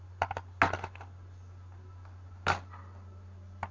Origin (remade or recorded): recorded